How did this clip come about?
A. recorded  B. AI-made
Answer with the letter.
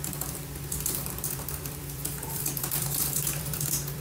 B